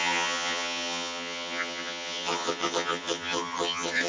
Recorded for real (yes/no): no